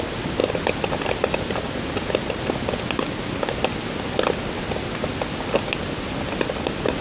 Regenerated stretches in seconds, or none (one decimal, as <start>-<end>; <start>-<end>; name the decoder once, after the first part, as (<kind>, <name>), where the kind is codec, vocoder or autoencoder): none